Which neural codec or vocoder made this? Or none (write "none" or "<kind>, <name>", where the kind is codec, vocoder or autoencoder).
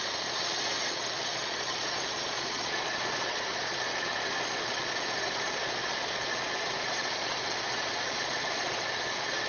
vocoder, Vocos